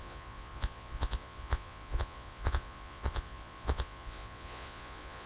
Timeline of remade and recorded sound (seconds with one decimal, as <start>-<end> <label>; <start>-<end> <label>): 0.0-5.3 remade